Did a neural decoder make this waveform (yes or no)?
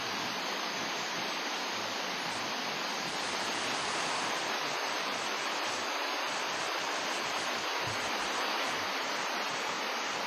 yes